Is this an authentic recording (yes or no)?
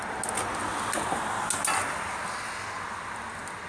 yes